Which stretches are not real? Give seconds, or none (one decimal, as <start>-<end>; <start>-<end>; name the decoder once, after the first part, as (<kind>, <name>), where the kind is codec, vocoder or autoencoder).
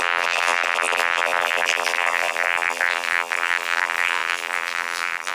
0.0-5.3 (vocoder, BigVGAN v2)